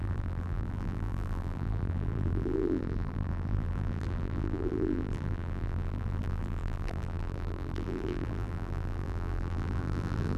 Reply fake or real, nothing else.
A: fake